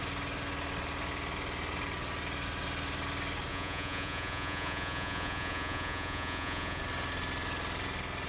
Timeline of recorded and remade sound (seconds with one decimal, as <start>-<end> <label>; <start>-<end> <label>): 0.0-3.5 recorded; 3.5-6.8 remade; 6.8-8.3 recorded